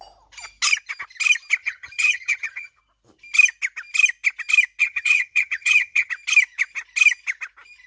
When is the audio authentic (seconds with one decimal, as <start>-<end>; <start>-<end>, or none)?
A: 0.0-1.6; 2.8-4.8; 6.1-7.9